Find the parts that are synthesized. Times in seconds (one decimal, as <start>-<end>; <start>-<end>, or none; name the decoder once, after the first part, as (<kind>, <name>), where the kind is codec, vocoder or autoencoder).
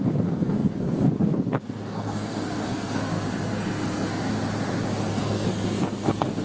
0.0-4.3 (codec, SNAC); 5.1-6.4